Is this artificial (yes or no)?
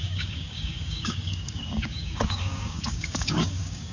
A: yes